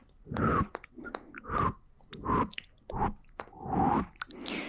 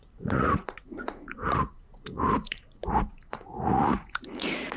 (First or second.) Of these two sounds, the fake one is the second